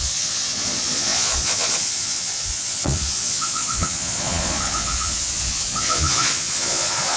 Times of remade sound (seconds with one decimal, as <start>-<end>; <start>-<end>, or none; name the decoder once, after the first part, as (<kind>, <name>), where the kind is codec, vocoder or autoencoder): 0.0-7.2 (vocoder, Vocos)